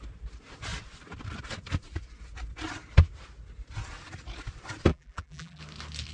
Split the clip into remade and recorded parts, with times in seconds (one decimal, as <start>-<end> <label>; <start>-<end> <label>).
0.0-4.9 recorded; 4.9-5.6 remade; 5.6-6.1 recorded